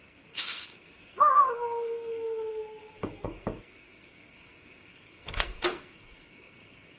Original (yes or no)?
no